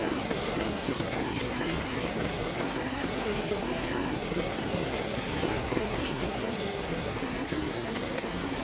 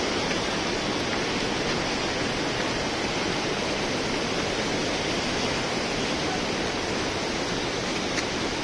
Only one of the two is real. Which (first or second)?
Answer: second